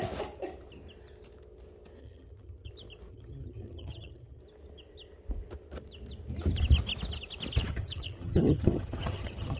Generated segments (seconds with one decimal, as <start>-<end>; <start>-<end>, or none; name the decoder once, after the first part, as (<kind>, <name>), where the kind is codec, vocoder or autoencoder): 2.0-2.7 (vocoder, HiFi-GAN); 3.1-4.4; 7.6-9.6